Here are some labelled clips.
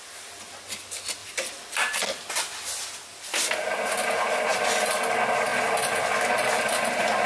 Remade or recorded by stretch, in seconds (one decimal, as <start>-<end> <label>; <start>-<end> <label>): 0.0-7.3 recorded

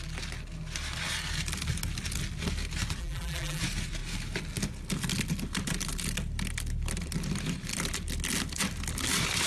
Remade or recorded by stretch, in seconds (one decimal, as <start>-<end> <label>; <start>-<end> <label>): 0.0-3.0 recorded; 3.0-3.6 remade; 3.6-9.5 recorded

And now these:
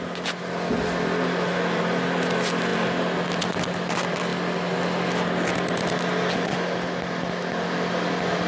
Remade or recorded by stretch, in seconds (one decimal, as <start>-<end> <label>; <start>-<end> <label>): 0.0-8.5 recorded